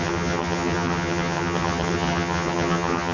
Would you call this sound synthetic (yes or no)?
yes